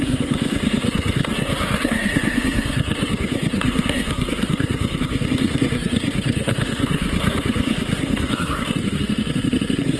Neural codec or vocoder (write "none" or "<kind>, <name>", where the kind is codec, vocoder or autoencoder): codec, SNAC